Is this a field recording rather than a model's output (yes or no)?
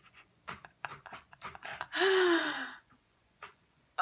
no